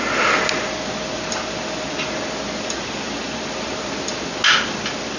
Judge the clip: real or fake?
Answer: real